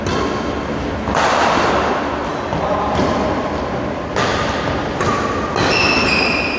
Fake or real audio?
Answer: real